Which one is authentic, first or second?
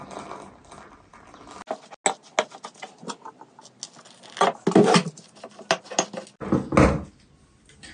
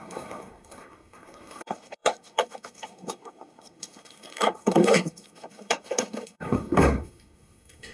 first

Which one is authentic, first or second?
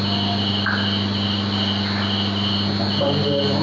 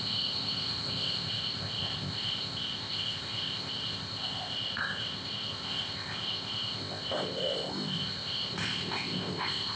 first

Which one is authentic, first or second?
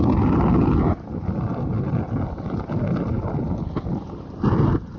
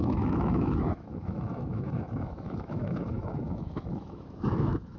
first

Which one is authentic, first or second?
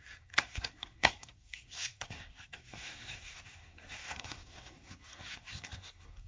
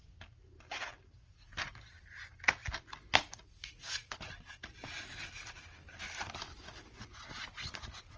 second